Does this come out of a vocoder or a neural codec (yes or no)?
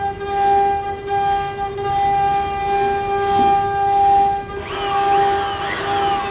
no